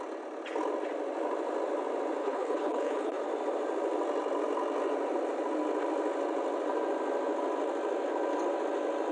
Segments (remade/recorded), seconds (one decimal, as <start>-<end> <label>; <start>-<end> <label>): 0.0-2.2 recorded; 2.2-3.2 remade; 3.2-9.1 recorded